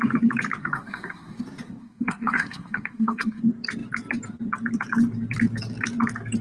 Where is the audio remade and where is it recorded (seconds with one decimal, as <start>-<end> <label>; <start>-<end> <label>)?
0.0-0.6 recorded; 0.6-1.4 remade; 1.4-1.8 recorded; 1.8-3.4 remade; 3.4-6.4 recorded

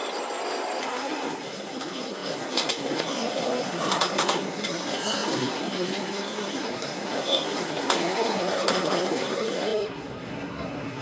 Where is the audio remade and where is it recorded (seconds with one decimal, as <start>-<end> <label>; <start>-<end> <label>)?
0.0-0.8 recorded; 0.8-11.0 remade

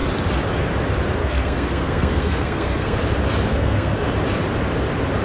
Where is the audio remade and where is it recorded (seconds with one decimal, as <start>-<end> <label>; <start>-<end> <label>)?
0.0-1.2 recorded; 1.2-3.0 remade; 3.0-3.5 recorded; 3.5-4.1 remade; 4.1-5.2 recorded

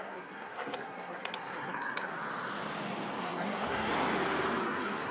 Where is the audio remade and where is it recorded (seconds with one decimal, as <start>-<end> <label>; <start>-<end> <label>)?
0.0-2.1 remade; 2.1-3.2 recorded; 3.2-3.9 remade; 3.9-4.6 recorded; 4.6-5.1 remade

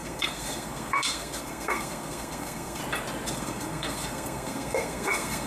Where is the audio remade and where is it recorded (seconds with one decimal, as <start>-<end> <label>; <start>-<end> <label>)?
0.0-2.8 remade; 2.8-3.3 recorded; 3.3-5.5 remade

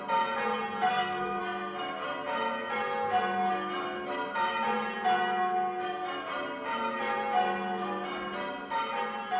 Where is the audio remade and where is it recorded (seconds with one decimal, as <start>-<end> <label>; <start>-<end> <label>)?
0.0-0.9 recorded; 0.9-1.4 remade; 1.4-9.4 recorded

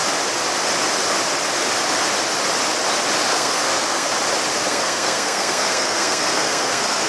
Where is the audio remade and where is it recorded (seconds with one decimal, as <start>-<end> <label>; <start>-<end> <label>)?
0.0-3.3 recorded; 3.3-4.1 remade; 4.1-4.5 recorded; 4.5-7.1 remade